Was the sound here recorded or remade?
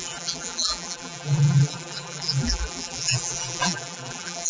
remade